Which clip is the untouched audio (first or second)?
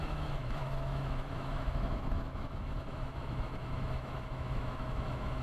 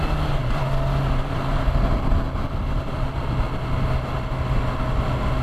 second